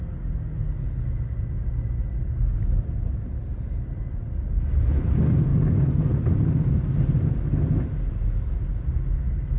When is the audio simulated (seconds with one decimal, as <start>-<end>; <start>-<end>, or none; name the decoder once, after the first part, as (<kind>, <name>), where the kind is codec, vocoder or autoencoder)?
none